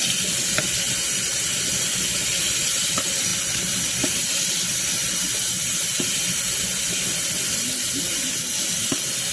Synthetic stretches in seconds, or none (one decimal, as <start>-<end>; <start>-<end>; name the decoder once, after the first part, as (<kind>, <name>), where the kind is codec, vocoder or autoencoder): none

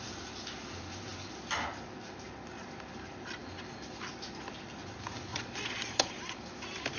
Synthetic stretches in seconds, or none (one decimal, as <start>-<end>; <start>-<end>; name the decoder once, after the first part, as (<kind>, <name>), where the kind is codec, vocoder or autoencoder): 5.3-6.1 (vocoder, Vocos)